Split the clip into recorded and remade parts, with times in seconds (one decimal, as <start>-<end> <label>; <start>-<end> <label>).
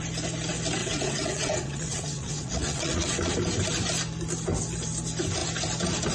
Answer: 0.0-0.8 recorded; 0.8-3.3 remade; 3.3-6.1 recorded